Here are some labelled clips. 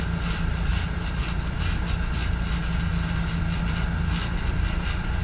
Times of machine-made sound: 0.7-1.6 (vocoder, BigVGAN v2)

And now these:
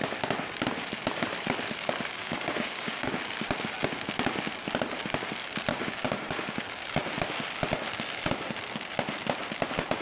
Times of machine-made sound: 2.2-3.1 (codec, DAC); 5.7-6.7

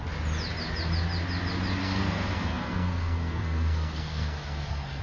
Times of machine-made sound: 1.8-5.0 (codec, SNAC)

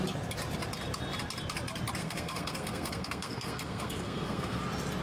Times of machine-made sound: 2.0-4.6 (codec, SNAC)

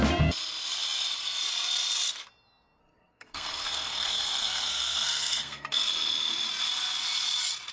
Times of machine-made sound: 2.8-5.9 (codec, SNAC)

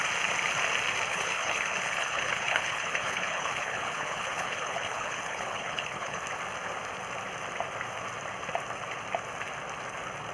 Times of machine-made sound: 1.1-6.2 (codec, HILCodec)

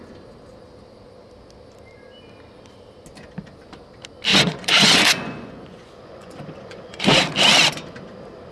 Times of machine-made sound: 4.3-7.2 (vocoder, Vocos)